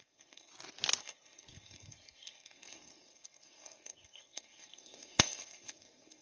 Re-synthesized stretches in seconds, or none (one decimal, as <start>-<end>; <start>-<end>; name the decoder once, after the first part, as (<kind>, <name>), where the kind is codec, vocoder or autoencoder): 0.0-0.5 (codec, SNAC); 1.0-6.2